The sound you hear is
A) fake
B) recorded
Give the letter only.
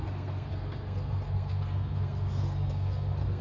A